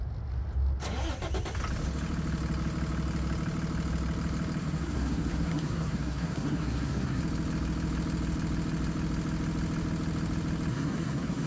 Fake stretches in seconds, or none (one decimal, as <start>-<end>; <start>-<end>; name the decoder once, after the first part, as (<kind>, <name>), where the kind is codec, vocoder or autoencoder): 4.6-7.2 (codec, SNAC); 10.7-11.5